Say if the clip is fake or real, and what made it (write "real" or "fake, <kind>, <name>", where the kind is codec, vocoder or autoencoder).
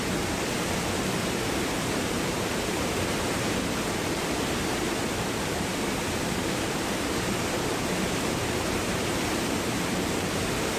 fake, vocoder, BigVGAN v2